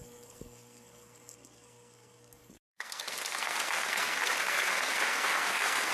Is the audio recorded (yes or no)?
no